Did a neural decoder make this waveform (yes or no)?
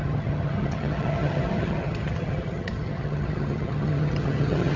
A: yes